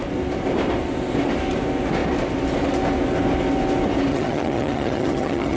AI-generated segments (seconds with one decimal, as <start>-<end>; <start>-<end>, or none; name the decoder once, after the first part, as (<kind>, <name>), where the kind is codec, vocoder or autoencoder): 4.1-5.6 (vocoder, HiFi-GAN)